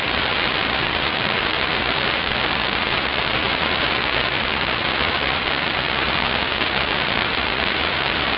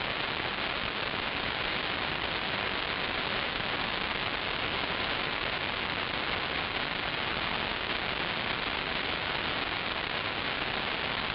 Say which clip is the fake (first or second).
first